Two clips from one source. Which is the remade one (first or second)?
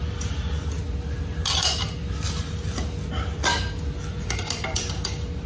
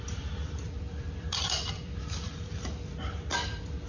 second